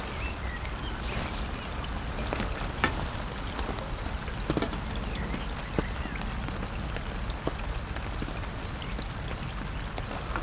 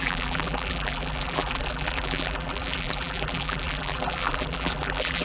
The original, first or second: first